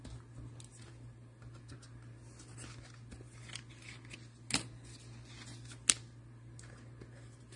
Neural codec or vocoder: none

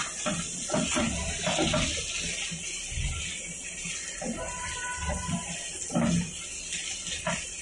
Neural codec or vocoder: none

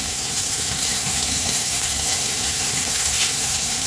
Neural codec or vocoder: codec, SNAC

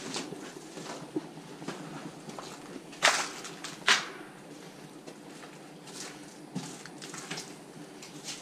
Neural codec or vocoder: none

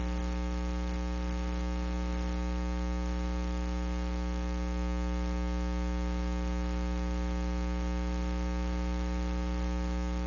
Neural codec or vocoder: none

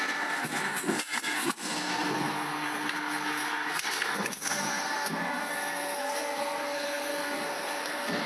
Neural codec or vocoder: codec, SNAC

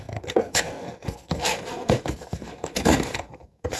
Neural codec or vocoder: codec, SNAC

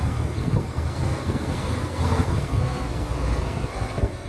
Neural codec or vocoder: codec, SNAC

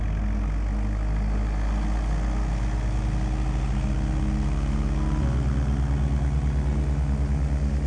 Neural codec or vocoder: none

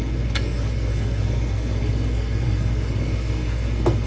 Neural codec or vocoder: codec, SNAC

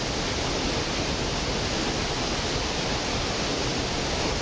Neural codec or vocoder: none